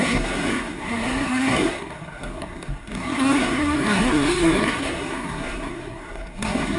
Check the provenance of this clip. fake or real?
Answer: fake